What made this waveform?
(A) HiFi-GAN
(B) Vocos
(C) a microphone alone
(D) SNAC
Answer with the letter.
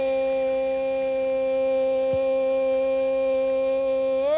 C